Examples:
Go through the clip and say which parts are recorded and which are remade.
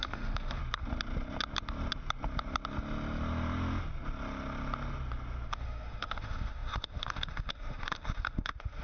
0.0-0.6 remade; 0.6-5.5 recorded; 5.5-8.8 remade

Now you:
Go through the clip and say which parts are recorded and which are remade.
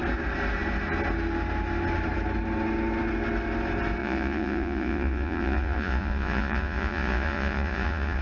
0.0-4.0 recorded; 4.0-8.2 remade